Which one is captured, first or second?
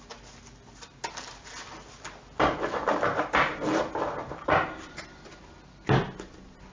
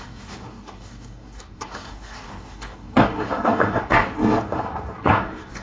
first